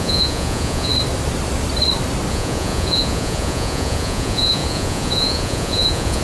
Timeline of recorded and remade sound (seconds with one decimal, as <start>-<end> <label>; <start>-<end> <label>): 0.0-0.9 remade; 0.9-2.3 recorded; 2.3-6.2 remade